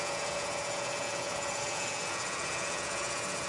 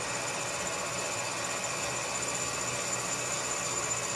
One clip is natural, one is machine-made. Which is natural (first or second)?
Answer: second